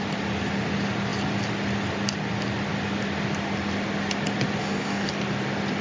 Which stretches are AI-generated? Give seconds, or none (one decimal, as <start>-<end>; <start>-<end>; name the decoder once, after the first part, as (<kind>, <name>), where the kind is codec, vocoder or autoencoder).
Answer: 4.6-5.1 (codec, DAC)